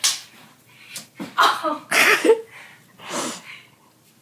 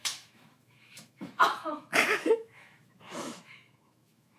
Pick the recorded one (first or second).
first